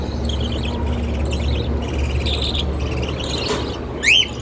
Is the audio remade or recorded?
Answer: recorded